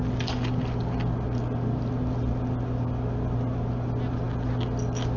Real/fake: real